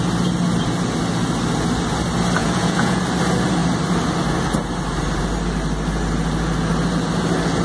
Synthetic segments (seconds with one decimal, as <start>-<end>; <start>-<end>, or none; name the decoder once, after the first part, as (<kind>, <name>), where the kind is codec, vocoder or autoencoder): 2.4-3.0 (vocoder, Vocos)